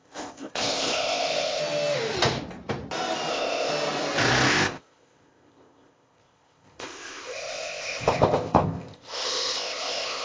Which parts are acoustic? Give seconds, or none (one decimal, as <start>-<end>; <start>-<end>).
1.6-3.3; 3.7-4.5

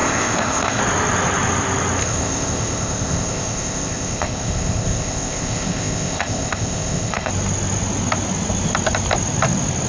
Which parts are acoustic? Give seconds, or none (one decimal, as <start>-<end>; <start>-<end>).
0.8-2.0; 7.3-9.9

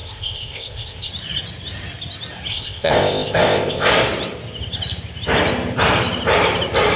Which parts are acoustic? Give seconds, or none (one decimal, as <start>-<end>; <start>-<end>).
1.1-2.5; 3.9-7.0